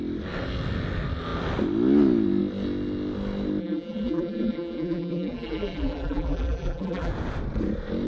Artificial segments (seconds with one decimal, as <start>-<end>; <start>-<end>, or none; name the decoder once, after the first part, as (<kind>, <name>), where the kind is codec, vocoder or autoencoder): 3.6-7.1 (vocoder, BigVGAN v2)